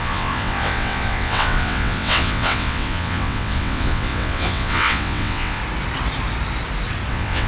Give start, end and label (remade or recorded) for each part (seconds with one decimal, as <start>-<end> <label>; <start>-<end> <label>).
0.0-5.6 remade; 5.6-7.1 recorded; 7.1-7.5 remade